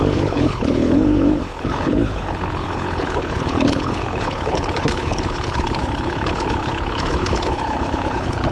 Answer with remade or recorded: remade